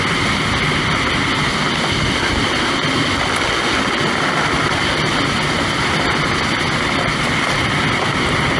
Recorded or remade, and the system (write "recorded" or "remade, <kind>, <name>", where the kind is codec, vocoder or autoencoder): recorded